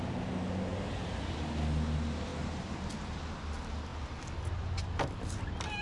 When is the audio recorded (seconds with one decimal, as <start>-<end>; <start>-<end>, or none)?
0.0-0.7; 1.5-2.3; 3.2-5.8